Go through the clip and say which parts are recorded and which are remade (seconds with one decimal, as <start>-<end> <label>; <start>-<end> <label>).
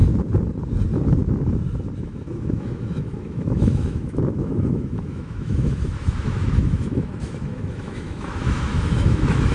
0.0-2.0 recorded; 2.0-9.5 remade